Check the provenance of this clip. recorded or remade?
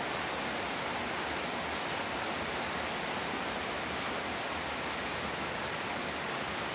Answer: recorded